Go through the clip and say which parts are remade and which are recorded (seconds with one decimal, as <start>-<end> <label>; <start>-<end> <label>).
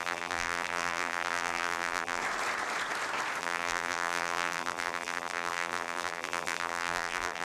0.0-2.2 remade; 2.2-3.4 recorded; 3.4-7.4 remade